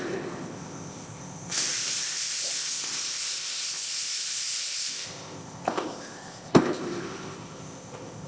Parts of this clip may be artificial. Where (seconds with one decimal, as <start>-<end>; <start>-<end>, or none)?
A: 0.0-8.3